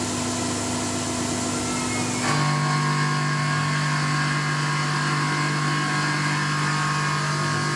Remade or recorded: recorded